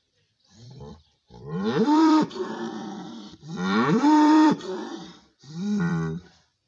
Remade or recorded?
remade